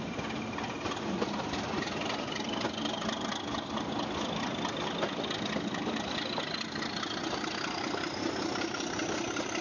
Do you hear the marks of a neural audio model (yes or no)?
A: no